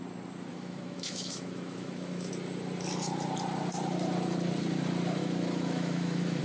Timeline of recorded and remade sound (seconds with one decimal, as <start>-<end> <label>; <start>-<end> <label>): 0.0-0.5 recorded; 0.5-2.3 remade; 2.3-5.2 recorded; 5.2-6.4 remade